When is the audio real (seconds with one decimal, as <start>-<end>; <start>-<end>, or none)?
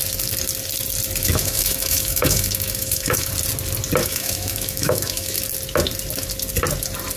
0.0-1.2; 3.3-4.0; 5.4-7.2